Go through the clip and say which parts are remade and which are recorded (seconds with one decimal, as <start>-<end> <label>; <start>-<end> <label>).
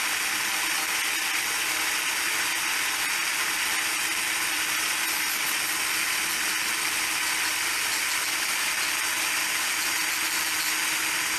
0.0-11.4 recorded